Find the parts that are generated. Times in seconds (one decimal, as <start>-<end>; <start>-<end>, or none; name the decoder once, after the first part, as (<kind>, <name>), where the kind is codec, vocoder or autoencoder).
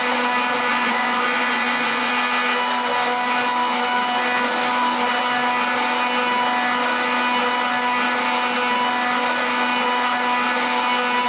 0.7-2.1 (vocoder, Vocos)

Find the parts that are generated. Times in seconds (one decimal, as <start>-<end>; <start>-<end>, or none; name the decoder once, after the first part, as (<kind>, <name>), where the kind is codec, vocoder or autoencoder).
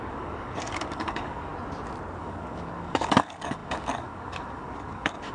0.0-1.5 (codec, DAC); 2.2-5.3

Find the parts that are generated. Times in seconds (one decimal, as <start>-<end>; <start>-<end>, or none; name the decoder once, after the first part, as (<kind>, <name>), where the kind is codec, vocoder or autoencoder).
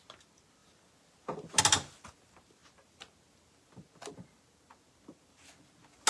none